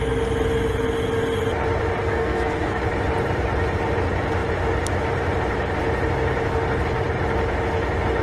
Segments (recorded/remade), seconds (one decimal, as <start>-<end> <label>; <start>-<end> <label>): 0.0-2.0 recorded; 2.0-2.8 remade; 2.8-8.2 recorded